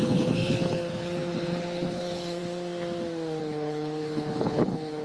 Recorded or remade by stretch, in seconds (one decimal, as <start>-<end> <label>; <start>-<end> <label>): 0.0-2.4 remade; 2.4-3.4 recorded; 3.4-5.0 remade